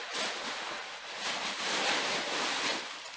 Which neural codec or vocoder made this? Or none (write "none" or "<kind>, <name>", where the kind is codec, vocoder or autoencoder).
vocoder, BigVGAN v2